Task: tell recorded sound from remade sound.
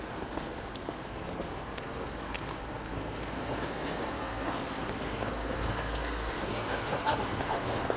remade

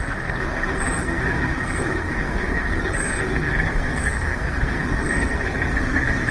remade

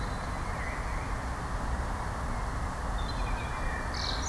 recorded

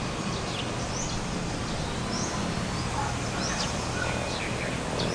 recorded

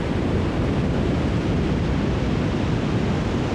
recorded